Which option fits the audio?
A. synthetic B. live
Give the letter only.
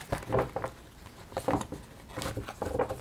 B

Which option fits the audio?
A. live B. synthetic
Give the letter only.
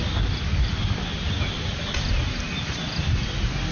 A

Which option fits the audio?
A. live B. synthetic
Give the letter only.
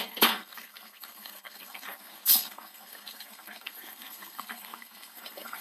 B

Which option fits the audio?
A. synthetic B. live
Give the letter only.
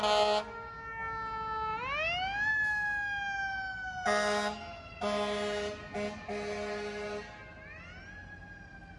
B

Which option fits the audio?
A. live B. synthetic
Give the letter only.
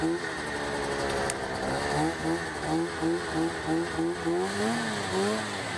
A